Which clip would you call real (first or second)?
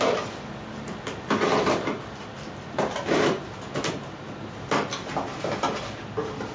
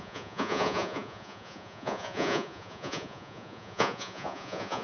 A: first